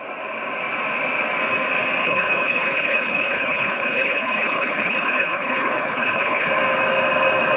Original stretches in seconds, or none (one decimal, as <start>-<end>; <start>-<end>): 0.0-2.0; 6.5-7.6